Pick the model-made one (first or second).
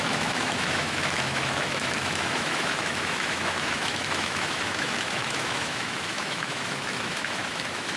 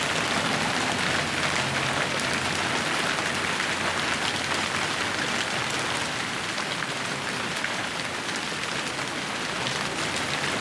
first